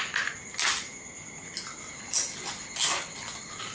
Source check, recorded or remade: recorded